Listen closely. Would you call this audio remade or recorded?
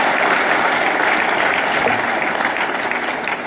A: recorded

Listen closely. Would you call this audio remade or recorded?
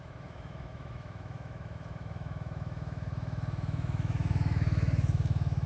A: remade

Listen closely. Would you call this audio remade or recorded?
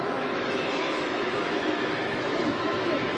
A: remade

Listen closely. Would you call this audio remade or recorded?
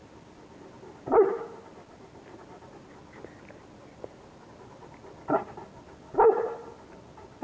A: recorded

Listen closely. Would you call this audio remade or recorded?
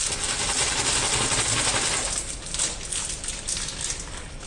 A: recorded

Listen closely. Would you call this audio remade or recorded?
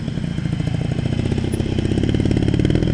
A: recorded